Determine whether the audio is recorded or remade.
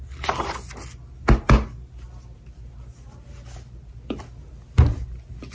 recorded